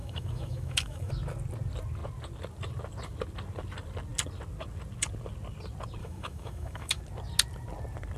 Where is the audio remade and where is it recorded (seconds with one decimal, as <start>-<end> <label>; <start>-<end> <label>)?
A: 0.0-1.1 remade; 1.1-6.0 recorded; 6.0-7.0 remade; 7.0-8.2 recorded